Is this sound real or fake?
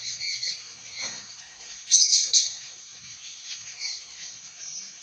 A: fake